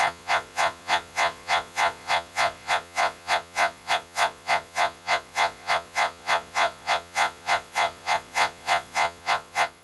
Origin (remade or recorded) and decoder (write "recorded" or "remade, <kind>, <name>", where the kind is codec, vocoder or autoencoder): remade, vocoder, Vocos